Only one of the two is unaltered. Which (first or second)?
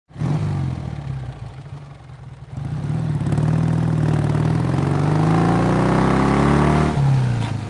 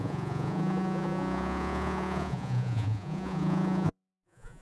first